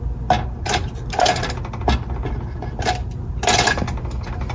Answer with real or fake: real